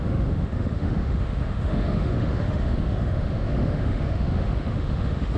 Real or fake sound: fake